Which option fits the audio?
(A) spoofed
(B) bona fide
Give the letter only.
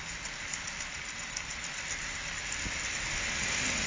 B